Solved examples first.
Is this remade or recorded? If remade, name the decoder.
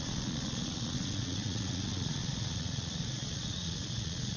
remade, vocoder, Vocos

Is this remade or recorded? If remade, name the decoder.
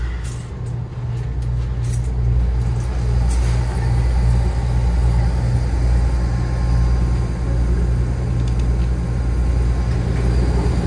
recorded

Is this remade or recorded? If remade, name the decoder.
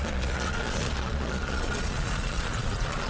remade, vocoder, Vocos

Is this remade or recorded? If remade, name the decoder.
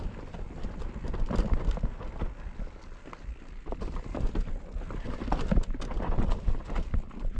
recorded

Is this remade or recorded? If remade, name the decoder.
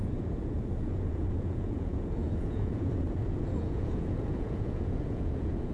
remade, vocoder, Vocos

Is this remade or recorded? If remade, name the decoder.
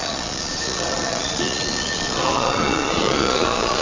remade, vocoder, Vocos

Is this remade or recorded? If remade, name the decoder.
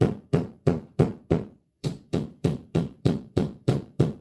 remade, vocoder, Vocos